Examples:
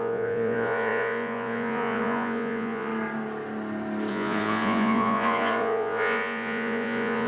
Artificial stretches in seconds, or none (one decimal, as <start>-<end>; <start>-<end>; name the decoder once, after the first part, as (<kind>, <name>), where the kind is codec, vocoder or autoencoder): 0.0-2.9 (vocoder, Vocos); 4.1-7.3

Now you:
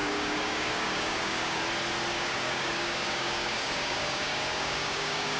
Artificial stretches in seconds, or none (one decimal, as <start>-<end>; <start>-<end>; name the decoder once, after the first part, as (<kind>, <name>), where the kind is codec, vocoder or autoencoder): 0.0-1.6 (codec, DAC); 2.1-5.4

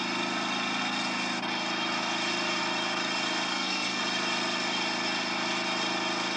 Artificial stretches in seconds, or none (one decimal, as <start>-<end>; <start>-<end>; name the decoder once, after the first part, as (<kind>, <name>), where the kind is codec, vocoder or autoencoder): 3.5-4.0 (codec, SNAC)

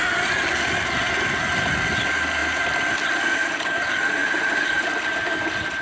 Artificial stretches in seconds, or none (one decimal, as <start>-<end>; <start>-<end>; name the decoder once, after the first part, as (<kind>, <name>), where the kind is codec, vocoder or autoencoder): none